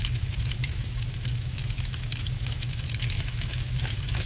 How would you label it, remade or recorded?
remade